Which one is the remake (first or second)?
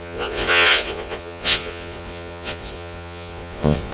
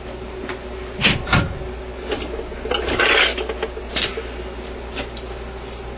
first